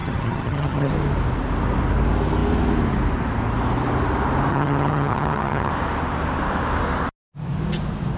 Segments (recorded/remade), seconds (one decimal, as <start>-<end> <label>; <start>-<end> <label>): 0.0-0.9 remade; 0.9-4.5 recorded; 4.5-5.7 remade; 5.7-8.2 recorded